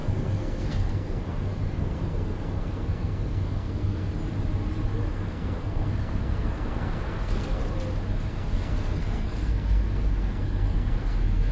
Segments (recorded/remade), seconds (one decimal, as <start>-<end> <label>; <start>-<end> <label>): 0.0-4.1 remade; 4.1-5.1 recorded; 5.1-7.6 remade; 7.6-8.3 recorded; 8.3-11.5 remade